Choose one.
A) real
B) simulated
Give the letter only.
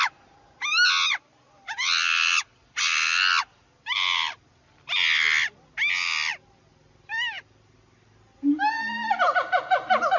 A